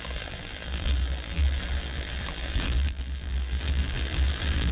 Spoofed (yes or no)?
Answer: yes